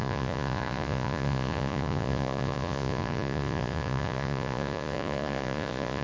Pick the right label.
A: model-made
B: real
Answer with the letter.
A